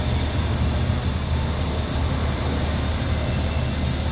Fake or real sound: real